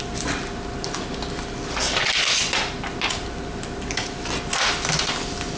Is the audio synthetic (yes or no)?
no